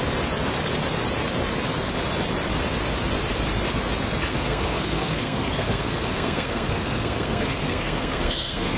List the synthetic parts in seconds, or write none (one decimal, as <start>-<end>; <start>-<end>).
4.3-8.8